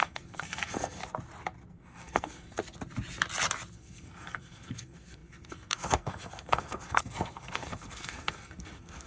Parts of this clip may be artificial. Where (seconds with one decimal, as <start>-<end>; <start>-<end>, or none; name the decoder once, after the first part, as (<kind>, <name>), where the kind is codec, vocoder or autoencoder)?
0.0-1.0 (codec, SNAC); 1.7-2.6; 3.7-9.1